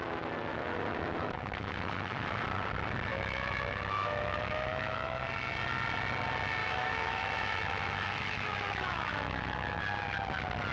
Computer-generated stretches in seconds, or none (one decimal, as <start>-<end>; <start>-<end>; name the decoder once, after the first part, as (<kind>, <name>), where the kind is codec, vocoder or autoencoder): 0.5-2.4 (autoencoder, DAC-VAE); 3.1-5.2; 6.6-9.8